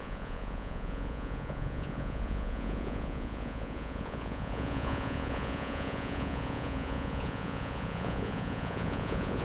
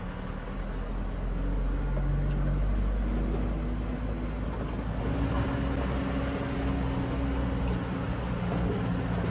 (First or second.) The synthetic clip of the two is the first